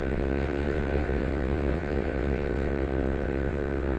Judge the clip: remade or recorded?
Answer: remade